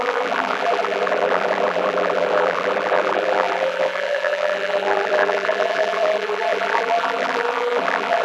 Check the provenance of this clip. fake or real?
fake